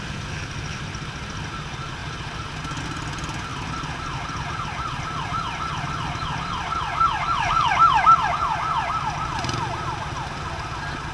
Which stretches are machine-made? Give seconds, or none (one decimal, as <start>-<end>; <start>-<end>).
none